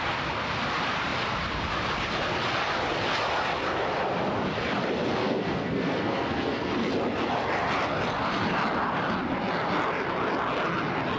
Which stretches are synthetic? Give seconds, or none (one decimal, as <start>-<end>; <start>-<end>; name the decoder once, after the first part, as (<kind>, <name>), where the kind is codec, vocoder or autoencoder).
5.2-6.7 (codec, SNAC)